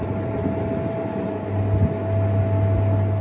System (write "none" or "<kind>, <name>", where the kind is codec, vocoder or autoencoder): none